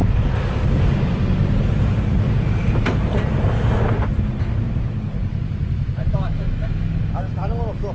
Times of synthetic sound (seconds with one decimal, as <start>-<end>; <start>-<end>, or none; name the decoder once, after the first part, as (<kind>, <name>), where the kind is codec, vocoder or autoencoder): 6.0-7.4 (autoencoder, DAC-VAE)